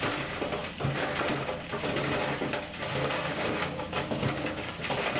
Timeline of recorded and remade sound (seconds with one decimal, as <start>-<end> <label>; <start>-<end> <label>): 0.0-2.9 recorded; 2.9-4.7 remade; 4.7-5.2 recorded